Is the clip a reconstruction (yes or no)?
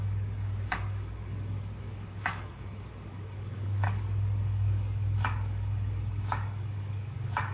yes